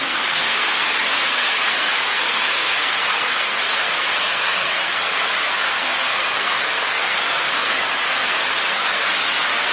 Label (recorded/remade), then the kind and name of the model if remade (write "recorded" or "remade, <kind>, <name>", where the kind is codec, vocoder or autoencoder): remade, codec, SNAC